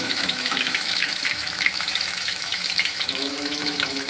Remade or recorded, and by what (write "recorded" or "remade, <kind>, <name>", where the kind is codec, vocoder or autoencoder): remade, autoencoder, DAC-VAE